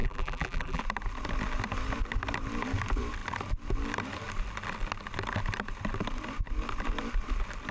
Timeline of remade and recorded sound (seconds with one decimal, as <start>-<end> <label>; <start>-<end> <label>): 0.0-0.8 remade; 0.8-7.7 recorded